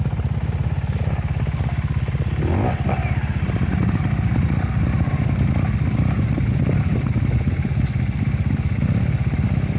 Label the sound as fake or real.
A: real